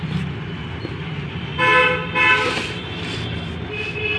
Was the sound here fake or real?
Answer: real